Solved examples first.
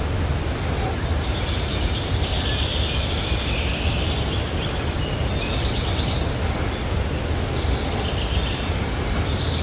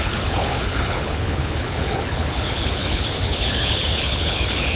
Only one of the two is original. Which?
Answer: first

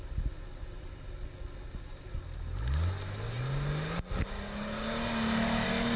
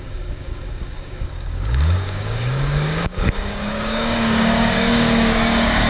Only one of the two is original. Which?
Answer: first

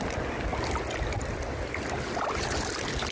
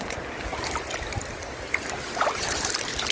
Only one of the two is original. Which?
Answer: first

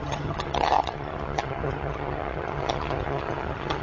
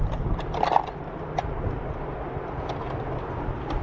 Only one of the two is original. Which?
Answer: second